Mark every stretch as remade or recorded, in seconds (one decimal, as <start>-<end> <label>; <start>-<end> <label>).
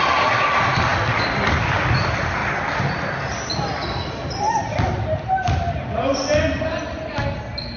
0.0-7.8 recorded